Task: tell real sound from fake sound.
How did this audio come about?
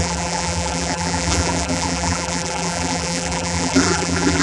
fake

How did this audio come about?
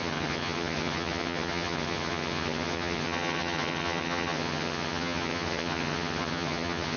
fake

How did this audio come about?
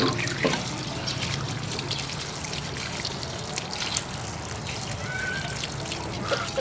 real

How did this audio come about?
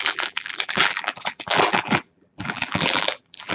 fake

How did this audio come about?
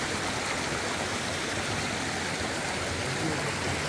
real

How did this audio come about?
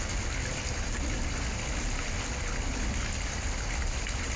real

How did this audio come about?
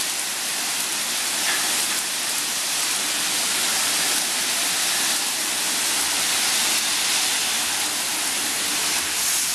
real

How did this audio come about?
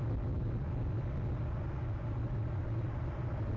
real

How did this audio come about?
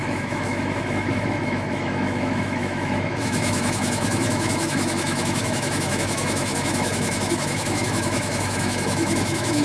fake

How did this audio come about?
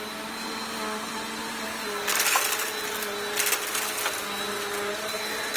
real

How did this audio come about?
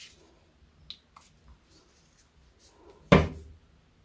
real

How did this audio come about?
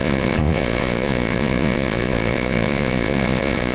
fake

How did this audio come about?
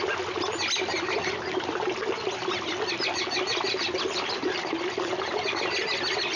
real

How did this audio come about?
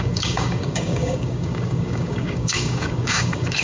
fake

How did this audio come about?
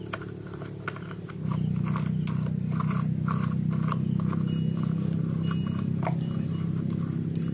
real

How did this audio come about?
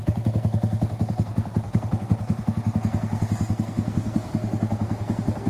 fake